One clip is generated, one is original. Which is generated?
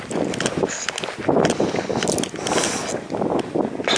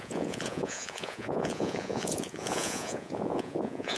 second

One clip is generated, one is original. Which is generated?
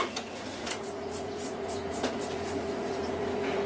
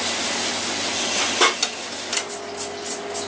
first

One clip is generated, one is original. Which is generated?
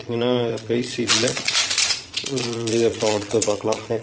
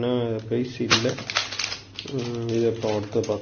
first